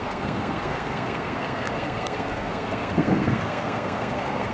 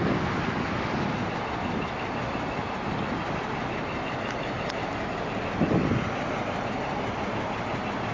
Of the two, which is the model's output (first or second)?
first